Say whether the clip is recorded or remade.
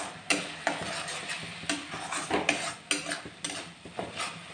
recorded